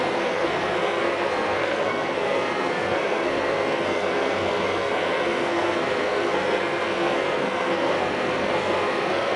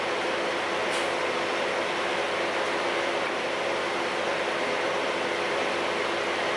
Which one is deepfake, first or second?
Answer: first